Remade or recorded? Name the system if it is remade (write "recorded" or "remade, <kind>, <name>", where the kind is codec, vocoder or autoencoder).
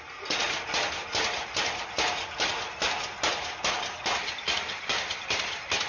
recorded